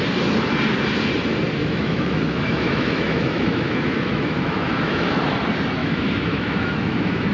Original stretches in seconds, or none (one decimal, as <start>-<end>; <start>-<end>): 0.0-1.6; 5.2-5.8

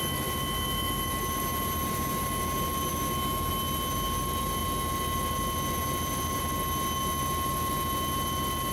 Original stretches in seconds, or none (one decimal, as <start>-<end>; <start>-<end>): 1.2-2.9; 3.5-8.7